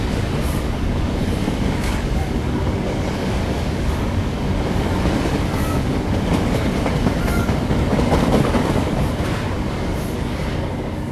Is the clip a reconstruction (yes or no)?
yes